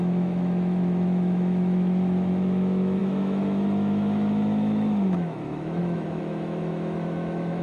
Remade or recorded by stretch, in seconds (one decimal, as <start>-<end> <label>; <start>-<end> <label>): 0.0-7.6 remade